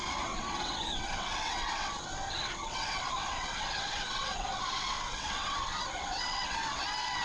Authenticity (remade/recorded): remade